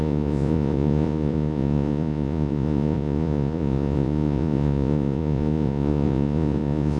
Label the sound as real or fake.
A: fake